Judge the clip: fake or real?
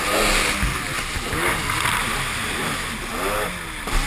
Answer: real